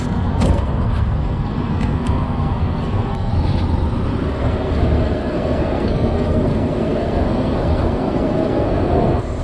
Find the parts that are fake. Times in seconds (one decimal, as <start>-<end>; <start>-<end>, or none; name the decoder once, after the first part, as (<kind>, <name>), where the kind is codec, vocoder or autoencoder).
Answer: 0.0-3.3 (codec, SNAC); 4.3-9.4